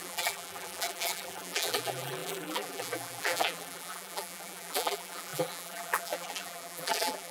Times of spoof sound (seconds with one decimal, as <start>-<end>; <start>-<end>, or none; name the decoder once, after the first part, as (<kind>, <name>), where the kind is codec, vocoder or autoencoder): 0.0-7.3 (vocoder, BigVGAN v2)